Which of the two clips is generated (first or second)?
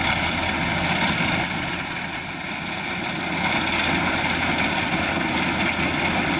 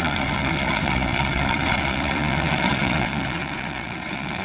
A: second